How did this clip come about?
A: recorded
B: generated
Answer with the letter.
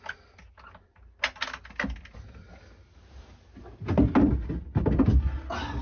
A